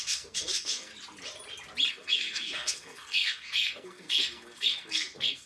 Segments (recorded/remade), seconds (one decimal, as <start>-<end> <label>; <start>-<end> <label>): 0.0-0.9 remade; 0.9-1.9 recorded; 1.9-5.5 remade